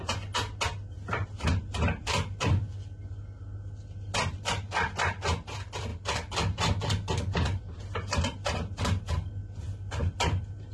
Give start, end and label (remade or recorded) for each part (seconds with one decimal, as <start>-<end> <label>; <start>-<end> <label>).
0.0-10.7 recorded